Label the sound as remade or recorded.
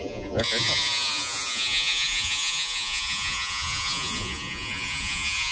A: remade